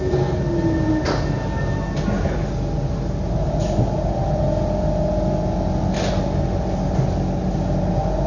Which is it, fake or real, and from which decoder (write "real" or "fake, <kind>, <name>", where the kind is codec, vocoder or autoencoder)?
real